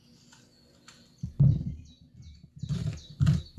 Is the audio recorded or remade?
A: recorded